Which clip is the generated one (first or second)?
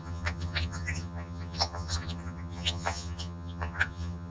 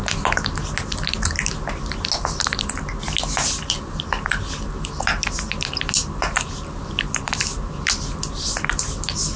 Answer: first